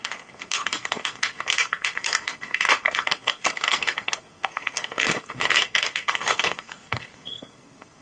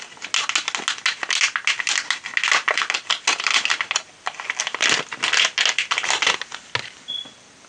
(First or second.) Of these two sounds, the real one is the second